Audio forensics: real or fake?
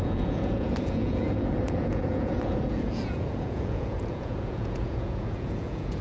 fake